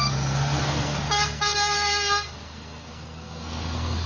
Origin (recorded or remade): remade